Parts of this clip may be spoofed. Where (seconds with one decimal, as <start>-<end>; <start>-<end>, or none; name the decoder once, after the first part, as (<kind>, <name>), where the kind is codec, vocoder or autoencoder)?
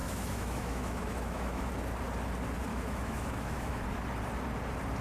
0.0-1.7 (autoencoder, DAC-VAE); 2.7-3.8